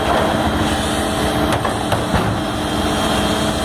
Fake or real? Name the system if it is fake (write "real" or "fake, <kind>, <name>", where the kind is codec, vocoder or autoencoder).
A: real